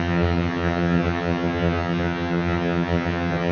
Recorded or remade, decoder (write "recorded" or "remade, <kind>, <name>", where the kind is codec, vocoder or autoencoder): remade, vocoder, HiFi-GAN